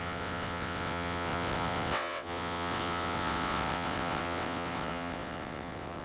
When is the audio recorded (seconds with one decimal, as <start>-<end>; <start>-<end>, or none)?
none